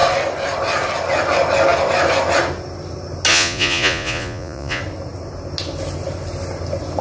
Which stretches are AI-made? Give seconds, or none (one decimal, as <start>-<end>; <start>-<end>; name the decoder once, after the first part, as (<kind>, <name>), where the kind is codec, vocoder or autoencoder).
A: 3.3-4.8 (vocoder, Vocos)